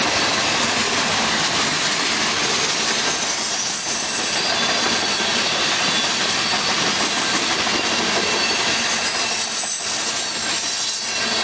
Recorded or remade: recorded